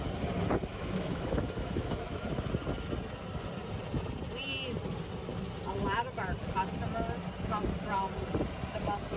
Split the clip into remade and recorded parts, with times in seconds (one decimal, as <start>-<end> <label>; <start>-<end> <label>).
0.0-0.7 recorded; 0.7-2.5 remade; 2.5-9.2 recorded